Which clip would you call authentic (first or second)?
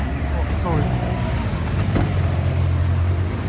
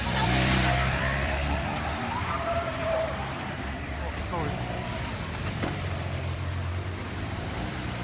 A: first